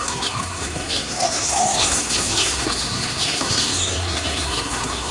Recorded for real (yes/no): no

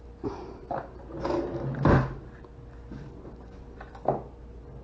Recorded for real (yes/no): yes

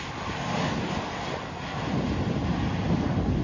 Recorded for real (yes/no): yes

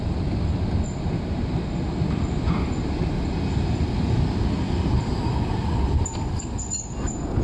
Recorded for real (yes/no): yes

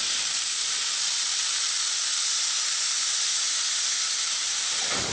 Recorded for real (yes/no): yes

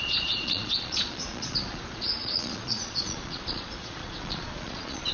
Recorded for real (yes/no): no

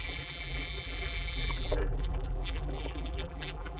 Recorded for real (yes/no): no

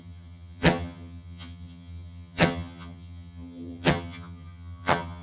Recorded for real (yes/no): no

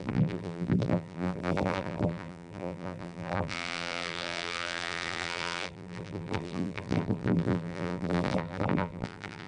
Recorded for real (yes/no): no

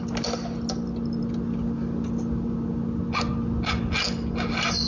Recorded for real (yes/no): yes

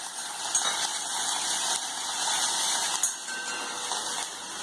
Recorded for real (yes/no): yes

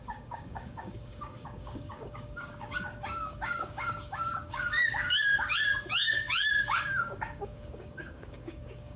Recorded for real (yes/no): no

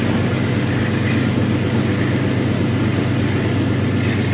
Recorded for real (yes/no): yes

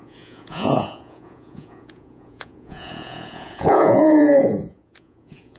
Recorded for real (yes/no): no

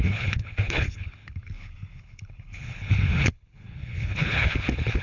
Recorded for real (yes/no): no